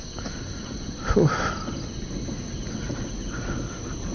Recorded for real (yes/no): yes